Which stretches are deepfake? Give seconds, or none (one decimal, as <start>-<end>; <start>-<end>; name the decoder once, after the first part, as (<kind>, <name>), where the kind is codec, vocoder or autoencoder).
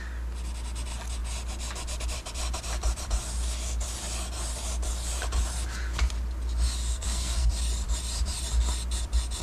6.9-7.5 (codec, SNAC)